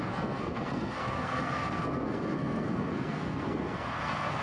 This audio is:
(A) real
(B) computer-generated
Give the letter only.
B